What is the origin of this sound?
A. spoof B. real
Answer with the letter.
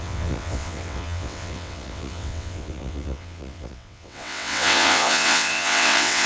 A